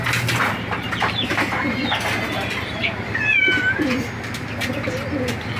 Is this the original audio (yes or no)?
yes